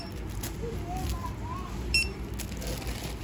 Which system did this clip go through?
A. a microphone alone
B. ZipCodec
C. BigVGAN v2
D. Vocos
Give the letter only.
A